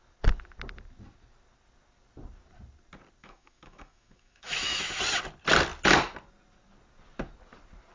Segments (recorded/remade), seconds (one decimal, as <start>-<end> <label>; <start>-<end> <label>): 0.0-3.2 recorded; 3.2-5.0 remade; 5.0-7.9 recorded